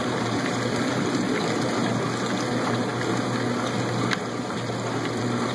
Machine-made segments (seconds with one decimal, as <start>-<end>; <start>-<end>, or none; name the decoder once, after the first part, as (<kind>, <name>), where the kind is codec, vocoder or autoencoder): 0.0-1.8 (vocoder, BigVGAN v2); 2.5-2.9; 4.0-5.5